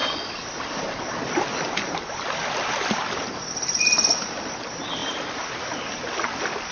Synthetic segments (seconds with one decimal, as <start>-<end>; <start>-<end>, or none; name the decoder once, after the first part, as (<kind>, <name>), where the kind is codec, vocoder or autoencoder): 0.0-3.5 (vocoder, BigVGAN v2); 5.0-6.1